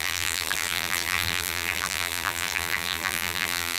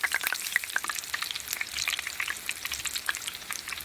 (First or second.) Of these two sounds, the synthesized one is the first